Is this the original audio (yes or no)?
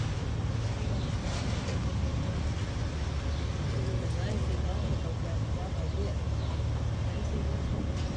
yes